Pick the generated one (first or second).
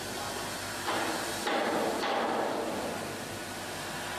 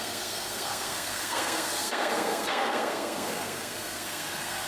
second